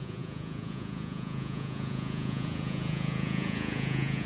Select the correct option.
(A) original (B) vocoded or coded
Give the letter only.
B